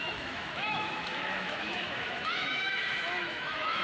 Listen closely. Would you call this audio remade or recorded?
remade